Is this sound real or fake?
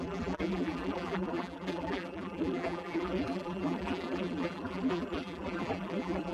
fake